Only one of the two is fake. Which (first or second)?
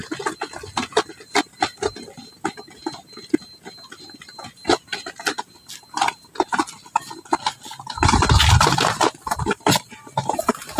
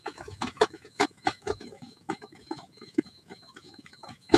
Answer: second